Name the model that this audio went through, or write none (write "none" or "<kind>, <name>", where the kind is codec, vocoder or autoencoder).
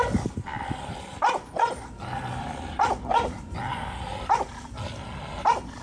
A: none